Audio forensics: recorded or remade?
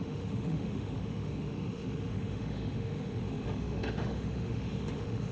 remade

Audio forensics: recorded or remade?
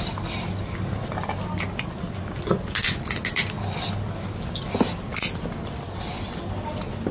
recorded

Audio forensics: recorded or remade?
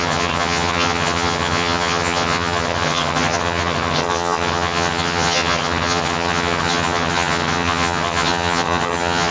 remade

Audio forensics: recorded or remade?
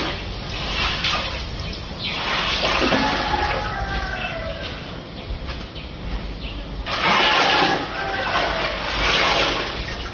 recorded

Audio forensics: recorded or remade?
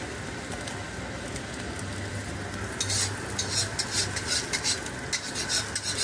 recorded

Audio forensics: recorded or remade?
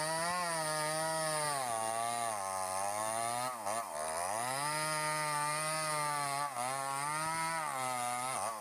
recorded